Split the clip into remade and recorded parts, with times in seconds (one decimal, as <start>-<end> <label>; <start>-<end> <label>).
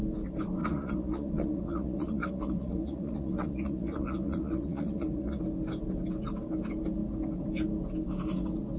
0.0-0.6 recorded; 0.6-5.4 remade; 5.4-8.8 recorded